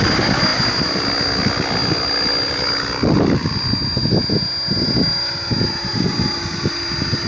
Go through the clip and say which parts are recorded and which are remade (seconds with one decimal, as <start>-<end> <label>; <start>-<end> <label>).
0.0-7.3 recorded

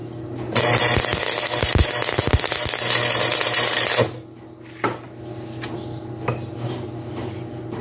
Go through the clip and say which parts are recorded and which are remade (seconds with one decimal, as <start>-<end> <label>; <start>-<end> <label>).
0.0-7.8 recorded

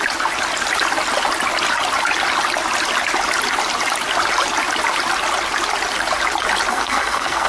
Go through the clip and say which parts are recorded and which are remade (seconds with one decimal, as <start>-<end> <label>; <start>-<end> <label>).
0.0-6.7 recorded; 6.7-7.5 remade

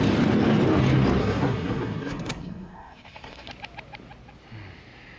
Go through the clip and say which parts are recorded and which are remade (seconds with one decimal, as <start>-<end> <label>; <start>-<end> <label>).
0.0-1.2 recorded; 1.2-3.5 remade; 3.5-5.2 recorded

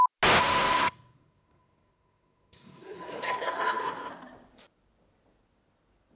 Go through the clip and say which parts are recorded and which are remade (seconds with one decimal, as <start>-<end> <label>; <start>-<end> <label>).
0.0-0.4 recorded; 0.4-4.1 remade; 4.1-6.2 recorded

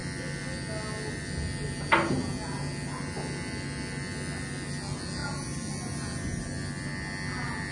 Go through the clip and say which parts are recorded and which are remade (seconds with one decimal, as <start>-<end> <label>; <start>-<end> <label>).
0.0-7.7 recorded

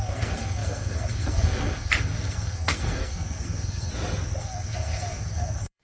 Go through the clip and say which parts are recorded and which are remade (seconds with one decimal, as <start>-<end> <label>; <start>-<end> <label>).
0.0-3.9 remade; 3.9-4.4 recorded; 4.4-5.8 remade